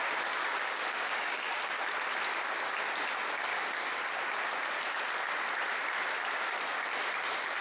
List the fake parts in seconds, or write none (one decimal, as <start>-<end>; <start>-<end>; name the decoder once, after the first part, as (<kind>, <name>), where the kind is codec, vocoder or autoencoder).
0.4-1.8 (codec, DAC); 3.5-4.1